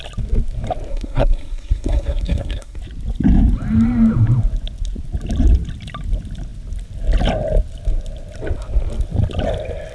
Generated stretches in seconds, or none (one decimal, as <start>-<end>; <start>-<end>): 0.9-2.8